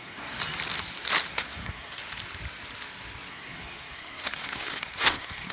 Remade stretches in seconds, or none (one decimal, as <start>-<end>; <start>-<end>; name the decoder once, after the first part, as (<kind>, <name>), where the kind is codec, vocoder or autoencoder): 0.0-0.4 (codec, SNAC); 1.3-2.0; 3.3-5.5

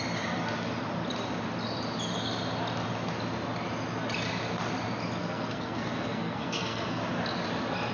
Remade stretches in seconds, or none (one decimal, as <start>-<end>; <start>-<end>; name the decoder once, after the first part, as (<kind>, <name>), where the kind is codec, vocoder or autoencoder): 5.2-7.0 (codec, SNAC)

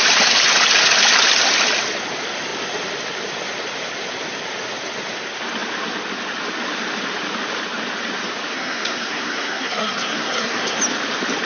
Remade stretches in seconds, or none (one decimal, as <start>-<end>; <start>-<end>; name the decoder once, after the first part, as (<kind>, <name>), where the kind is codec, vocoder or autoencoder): 8.5-10.8 (codec, SNAC)